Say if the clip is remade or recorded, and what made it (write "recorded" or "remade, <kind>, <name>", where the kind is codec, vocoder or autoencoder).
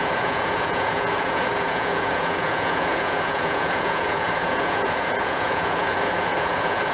remade, vocoder, Vocos